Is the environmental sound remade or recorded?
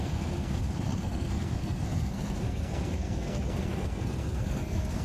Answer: remade